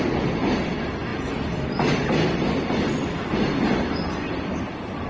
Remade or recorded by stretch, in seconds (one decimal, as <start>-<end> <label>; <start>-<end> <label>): 0.0-5.1 recorded